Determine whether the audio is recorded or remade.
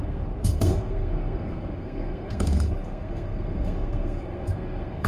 remade